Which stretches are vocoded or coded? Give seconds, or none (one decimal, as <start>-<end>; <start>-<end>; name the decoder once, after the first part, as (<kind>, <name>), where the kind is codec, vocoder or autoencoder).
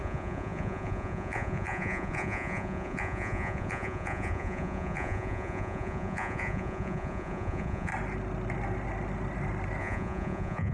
0.0-7.9 (vocoder, Vocos); 9.8-10.7